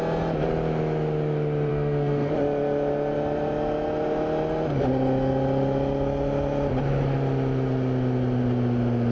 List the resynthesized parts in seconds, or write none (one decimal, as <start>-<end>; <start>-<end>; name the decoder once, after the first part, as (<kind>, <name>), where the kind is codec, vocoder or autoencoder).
1.7-2.3 (codec, SNAC)